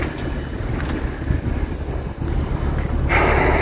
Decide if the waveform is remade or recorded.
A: recorded